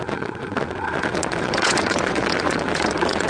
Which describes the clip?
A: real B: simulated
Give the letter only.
B